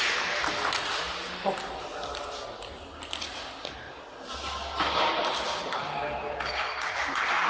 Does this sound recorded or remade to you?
recorded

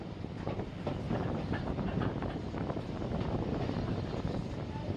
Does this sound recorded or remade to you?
remade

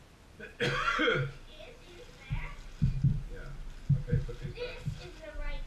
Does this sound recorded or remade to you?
recorded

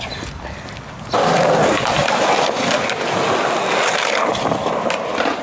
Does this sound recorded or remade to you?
recorded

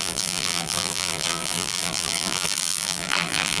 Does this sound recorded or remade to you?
remade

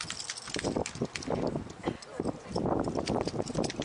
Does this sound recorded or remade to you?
recorded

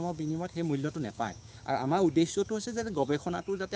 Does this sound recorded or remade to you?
remade